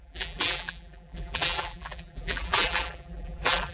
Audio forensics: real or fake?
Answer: fake